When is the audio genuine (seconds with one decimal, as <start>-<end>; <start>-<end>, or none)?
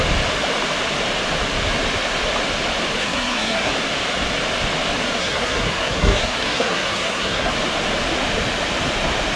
0.0-3.0; 3.7-5.2; 7.5-9.3